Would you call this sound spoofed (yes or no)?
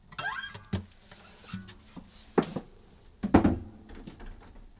no